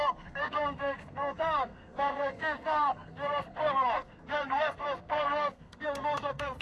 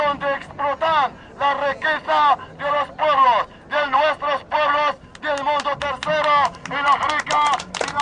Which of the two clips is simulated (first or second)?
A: first